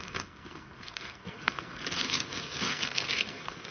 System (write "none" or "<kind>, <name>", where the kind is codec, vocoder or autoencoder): codec, SNAC